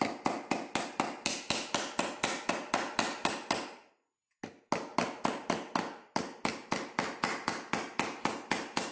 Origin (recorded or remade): recorded